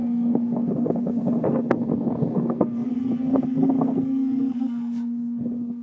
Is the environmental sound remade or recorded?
remade